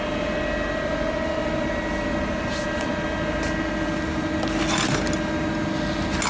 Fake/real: real